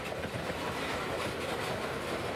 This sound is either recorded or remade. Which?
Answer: recorded